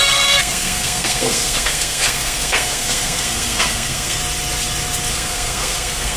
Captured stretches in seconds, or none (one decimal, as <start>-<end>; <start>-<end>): 4.2-5.1